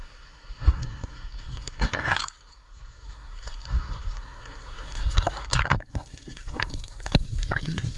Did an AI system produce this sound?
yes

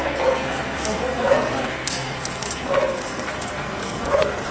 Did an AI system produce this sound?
yes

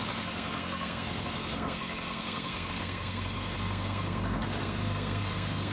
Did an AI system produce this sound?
yes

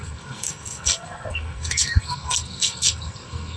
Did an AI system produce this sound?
yes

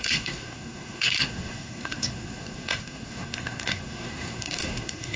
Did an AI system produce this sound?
yes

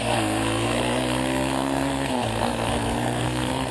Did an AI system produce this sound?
yes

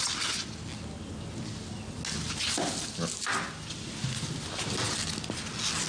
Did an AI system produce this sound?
no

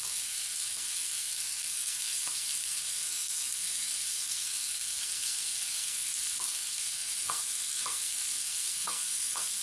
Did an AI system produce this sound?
yes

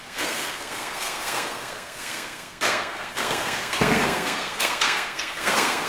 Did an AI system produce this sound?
yes